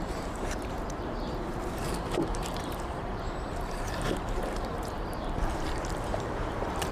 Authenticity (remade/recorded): remade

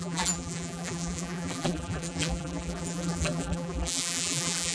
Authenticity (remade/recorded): remade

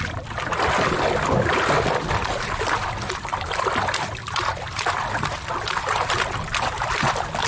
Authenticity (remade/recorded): recorded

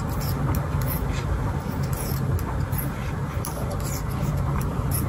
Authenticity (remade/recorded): recorded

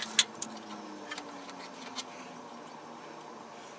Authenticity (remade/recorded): recorded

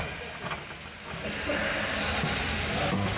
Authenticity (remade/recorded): recorded